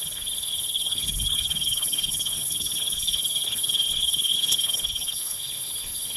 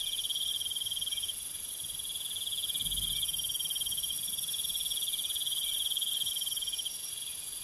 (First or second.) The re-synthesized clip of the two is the first